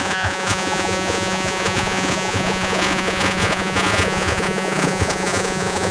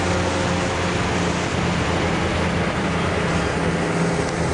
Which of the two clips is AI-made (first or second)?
first